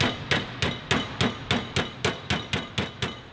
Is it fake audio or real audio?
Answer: real